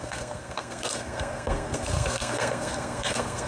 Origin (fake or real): fake